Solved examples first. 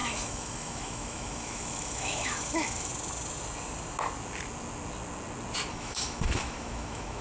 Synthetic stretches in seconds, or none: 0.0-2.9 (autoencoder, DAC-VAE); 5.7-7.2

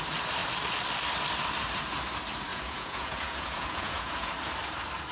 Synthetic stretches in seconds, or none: 2.5-4.3 (vocoder, Vocos)

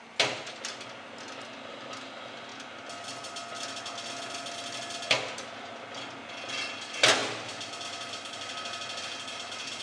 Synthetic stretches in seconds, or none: none